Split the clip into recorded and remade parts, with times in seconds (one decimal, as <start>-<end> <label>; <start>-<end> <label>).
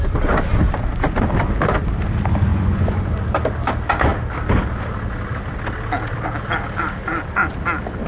0.0-2.5 recorded; 2.5-3.1 remade; 3.1-8.1 recorded